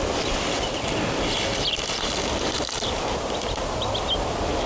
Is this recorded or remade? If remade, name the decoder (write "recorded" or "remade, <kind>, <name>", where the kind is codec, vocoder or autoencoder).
recorded